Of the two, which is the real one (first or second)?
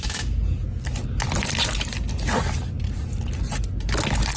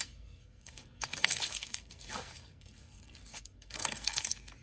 first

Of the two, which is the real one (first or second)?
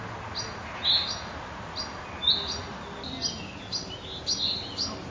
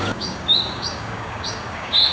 first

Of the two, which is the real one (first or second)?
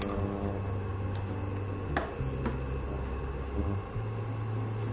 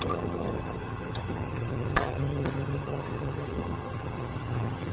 first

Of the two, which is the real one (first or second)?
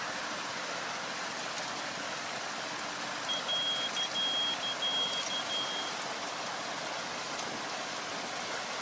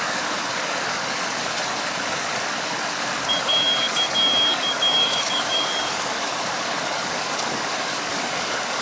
first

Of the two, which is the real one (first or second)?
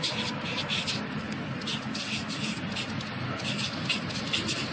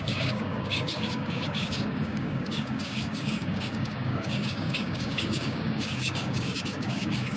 first